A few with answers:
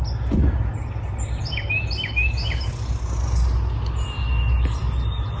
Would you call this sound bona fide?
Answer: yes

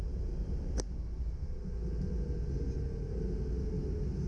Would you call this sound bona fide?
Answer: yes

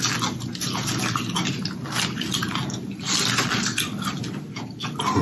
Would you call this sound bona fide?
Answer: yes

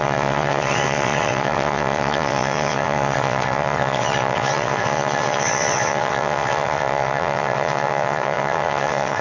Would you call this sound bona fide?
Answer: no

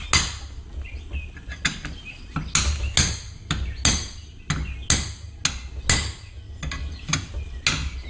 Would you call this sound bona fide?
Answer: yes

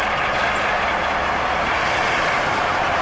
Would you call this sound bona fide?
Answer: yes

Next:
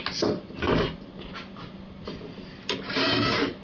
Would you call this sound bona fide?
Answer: yes